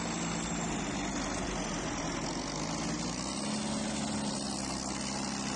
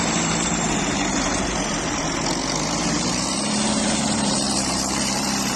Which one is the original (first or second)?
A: first